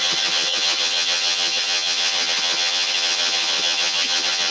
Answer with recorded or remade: remade